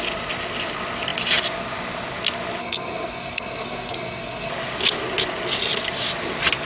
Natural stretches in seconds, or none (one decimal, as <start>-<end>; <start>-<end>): 0.0-2.6; 4.5-6.6